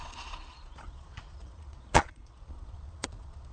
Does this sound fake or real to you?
fake